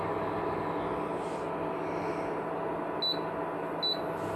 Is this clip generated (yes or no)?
no